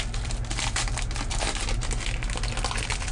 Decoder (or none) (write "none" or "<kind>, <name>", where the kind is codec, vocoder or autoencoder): none